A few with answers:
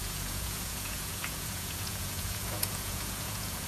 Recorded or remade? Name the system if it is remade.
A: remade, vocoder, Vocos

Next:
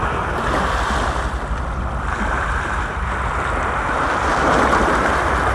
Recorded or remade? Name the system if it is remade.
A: recorded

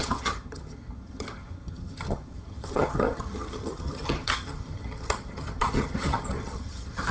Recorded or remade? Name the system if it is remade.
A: remade, vocoder, HiFi-GAN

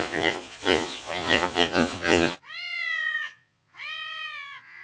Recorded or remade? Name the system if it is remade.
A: remade, vocoder, Vocos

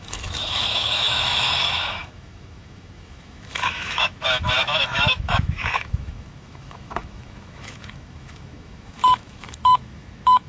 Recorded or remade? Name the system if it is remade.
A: remade, autoencoder, DAC-VAE